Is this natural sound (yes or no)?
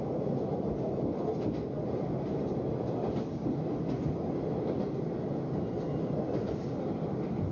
yes